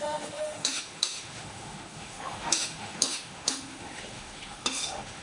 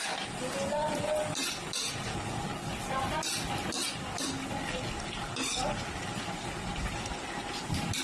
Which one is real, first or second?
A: second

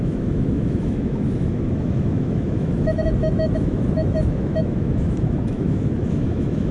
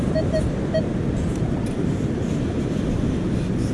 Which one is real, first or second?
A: second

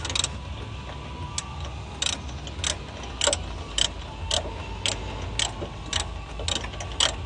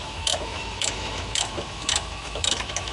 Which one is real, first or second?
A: first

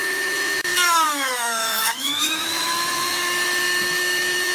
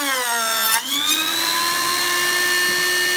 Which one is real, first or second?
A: second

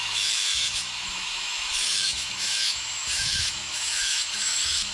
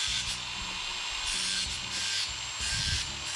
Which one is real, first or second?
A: second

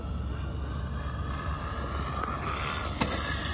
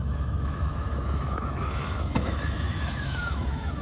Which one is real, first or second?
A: first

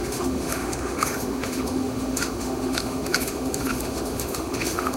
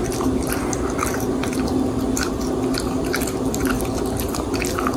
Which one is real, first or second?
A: second